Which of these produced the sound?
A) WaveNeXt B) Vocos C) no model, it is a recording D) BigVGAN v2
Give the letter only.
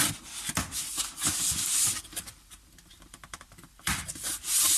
D